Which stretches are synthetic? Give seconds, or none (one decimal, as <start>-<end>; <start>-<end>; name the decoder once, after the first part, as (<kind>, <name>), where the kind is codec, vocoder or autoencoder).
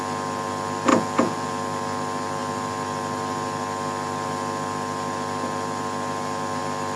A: 0.9-1.5 (vocoder, Vocos)